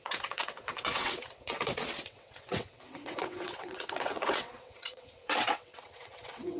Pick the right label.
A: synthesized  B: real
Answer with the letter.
A